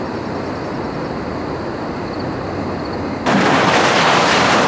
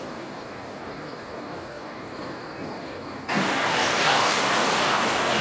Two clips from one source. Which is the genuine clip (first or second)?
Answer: first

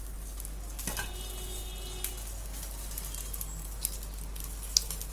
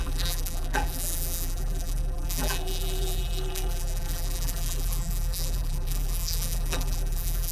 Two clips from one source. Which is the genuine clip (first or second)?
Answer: first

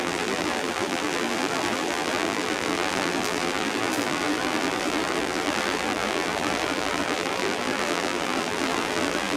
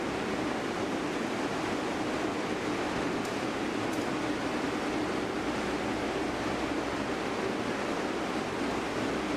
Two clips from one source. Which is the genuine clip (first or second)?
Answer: second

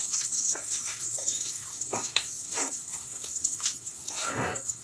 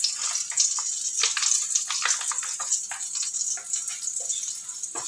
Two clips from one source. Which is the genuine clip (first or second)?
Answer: second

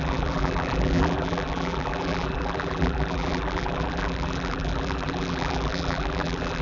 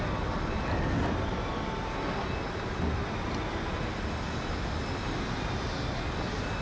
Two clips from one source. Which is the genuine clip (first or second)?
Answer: second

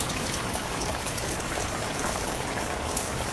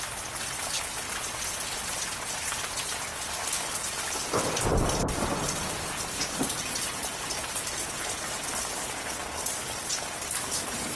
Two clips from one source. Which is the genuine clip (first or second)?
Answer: second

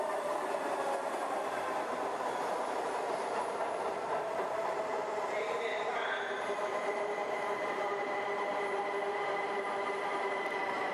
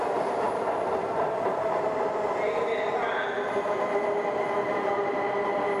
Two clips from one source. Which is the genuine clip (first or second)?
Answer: second